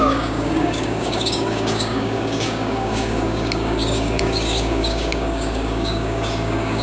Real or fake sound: fake